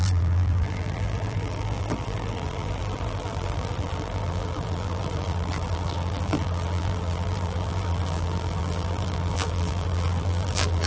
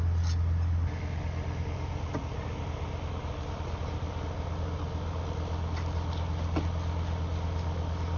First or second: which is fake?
first